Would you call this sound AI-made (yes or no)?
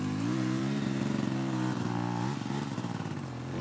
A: yes